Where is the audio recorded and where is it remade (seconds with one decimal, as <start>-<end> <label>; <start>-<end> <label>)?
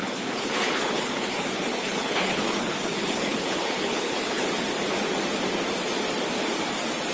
0.0-4.4 remade; 4.4-7.1 recorded